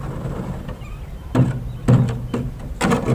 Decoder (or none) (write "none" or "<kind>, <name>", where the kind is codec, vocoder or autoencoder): none